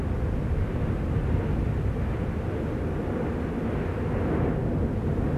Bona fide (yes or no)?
yes